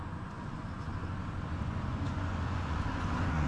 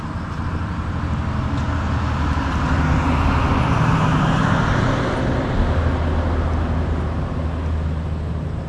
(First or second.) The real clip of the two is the second